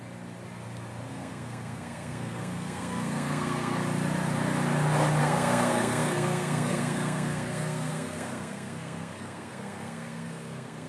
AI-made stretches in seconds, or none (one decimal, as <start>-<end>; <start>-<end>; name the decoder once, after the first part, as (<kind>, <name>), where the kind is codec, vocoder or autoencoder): 1.1-3.8 (codec, SNAC); 5.2-10.9